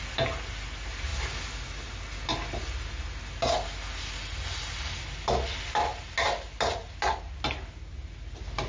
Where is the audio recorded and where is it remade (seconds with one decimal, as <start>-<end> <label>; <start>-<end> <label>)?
0.0-8.7 recorded